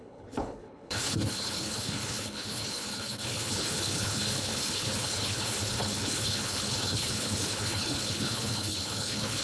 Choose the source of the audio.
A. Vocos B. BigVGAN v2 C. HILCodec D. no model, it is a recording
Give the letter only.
C